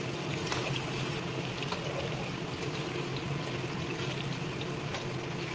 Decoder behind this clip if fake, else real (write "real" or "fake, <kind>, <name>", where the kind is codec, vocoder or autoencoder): real